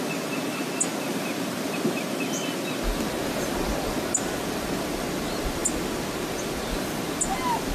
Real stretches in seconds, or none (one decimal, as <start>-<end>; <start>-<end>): 0.0-7.7